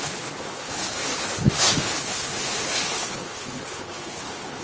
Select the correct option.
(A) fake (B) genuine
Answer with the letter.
A